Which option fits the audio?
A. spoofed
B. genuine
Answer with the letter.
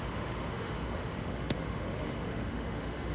A